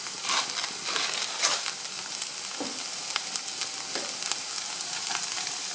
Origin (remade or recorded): recorded